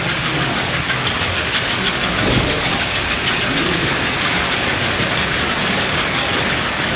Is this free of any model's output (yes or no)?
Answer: no